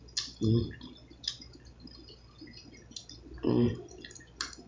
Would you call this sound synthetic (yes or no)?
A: no